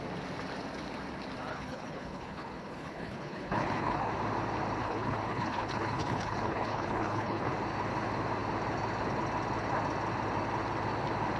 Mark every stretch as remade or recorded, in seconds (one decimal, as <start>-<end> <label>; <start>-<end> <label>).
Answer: 0.0-1.5 recorded; 1.5-4.1 remade; 4.1-4.8 recorded; 4.8-7.5 remade; 7.5-11.4 recorded